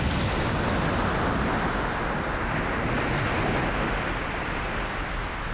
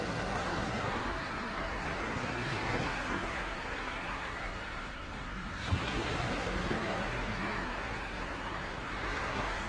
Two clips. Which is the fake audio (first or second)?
second